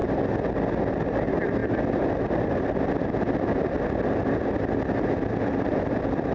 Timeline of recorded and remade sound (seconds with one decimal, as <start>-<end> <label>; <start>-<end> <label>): 0.0-1.0 recorded; 1.0-6.3 remade